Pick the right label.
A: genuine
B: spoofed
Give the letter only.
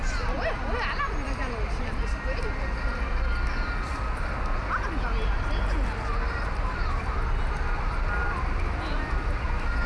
A